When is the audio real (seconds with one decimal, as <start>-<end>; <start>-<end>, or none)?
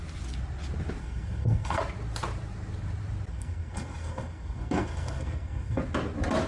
0.0-1.0; 1.8-3.3; 5.8-6.5